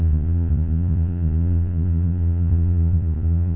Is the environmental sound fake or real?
fake